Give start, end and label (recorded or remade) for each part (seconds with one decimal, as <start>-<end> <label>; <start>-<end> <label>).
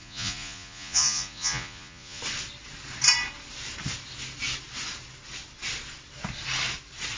0.0-2.2 remade; 2.2-7.2 recorded